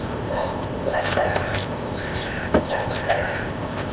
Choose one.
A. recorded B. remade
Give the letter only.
B